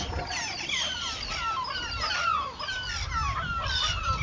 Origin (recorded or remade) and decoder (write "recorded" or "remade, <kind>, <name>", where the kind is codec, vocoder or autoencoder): recorded